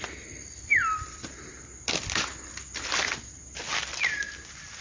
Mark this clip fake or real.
real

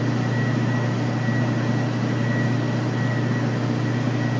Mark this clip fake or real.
real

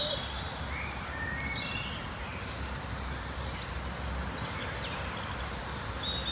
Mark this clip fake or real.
real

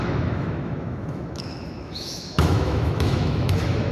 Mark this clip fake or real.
fake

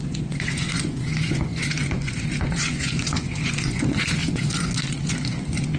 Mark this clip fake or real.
fake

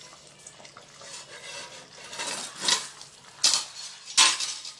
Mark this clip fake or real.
real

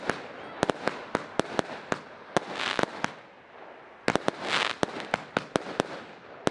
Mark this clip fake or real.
real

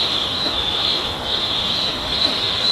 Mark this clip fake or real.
fake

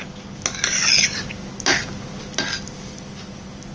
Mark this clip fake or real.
real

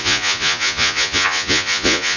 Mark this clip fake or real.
fake